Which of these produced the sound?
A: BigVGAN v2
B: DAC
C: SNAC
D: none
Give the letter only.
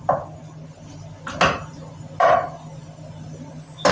D